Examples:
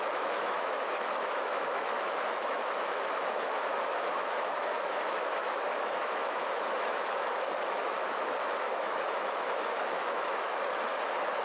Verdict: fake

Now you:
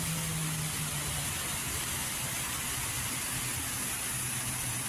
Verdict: real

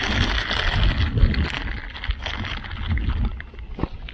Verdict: real